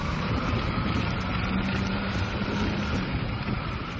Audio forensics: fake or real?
fake